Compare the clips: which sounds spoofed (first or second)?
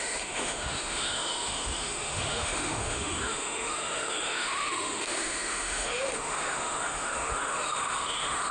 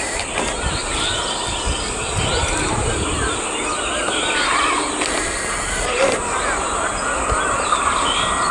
first